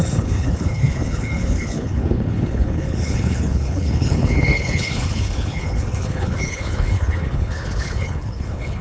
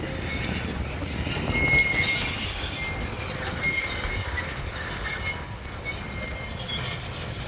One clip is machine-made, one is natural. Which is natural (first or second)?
second